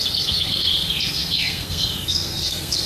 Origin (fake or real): fake